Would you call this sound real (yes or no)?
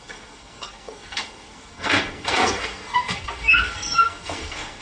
no